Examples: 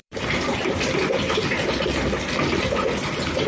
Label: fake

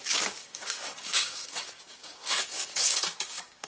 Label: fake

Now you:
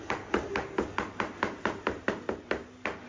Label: real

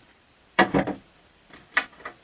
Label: fake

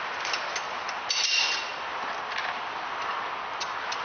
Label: real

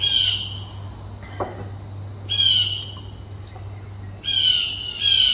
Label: real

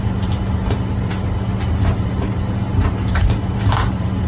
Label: fake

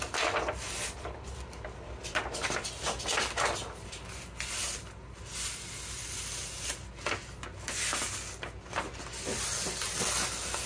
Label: real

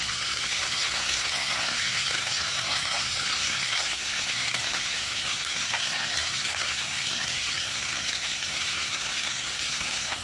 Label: fake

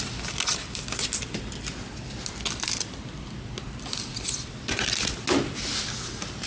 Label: real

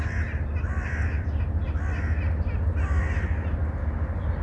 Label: real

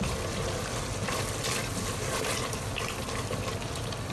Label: fake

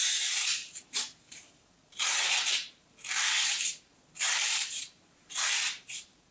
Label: fake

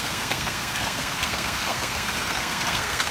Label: fake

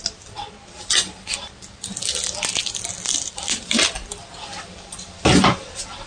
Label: real